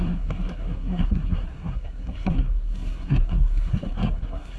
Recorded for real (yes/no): no